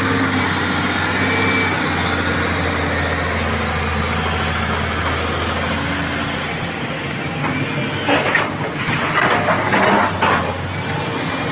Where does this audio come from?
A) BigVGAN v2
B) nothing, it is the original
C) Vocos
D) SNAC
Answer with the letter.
B